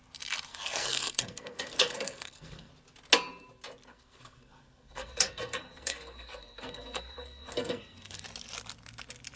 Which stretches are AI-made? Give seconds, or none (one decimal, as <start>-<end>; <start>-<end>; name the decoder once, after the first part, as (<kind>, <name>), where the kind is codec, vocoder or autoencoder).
0.5-2.7 (codec, SNAC); 3.9-8.2